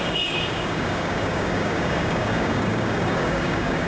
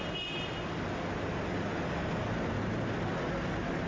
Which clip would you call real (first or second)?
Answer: second